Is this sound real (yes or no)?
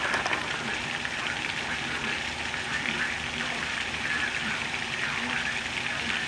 yes